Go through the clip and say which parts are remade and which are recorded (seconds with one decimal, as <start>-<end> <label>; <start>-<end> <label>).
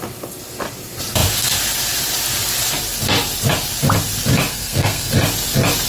0.0-4.5 recorded; 4.5-5.1 remade; 5.1-5.9 recorded